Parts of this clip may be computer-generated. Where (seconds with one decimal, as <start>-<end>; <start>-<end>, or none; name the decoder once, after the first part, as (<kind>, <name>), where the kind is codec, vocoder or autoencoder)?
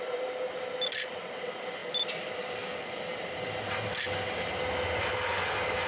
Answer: none